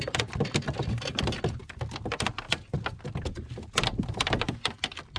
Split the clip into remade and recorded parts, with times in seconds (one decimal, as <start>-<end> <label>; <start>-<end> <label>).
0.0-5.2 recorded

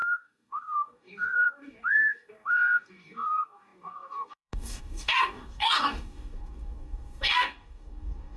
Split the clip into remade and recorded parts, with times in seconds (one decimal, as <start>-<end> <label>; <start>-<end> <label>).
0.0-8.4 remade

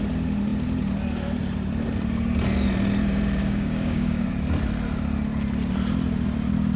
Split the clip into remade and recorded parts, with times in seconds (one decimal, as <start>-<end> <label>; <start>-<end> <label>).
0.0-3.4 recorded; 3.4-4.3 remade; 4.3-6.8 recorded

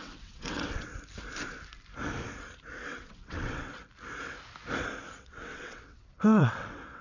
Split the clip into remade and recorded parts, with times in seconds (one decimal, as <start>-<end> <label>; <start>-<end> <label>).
0.0-0.9 remade; 0.9-2.7 recorded; 2.7-3.8 remade; 3.8-5.2 recorded; 5.2-7.0 remade